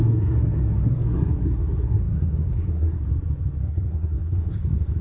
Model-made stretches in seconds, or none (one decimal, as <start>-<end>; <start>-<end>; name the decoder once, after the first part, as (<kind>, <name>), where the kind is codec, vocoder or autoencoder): 0.0-3.1 (codec, SNAC); 3.6-5.0